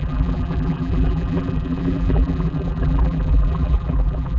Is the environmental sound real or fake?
fake